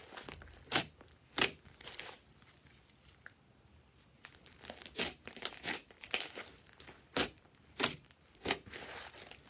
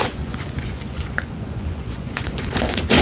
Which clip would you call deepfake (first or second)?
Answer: second